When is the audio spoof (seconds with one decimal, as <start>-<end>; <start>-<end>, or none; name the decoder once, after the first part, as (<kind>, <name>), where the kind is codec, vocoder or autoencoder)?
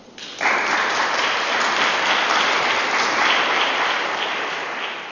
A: 1.0-1.9 (vocoder, BigVGAN v2)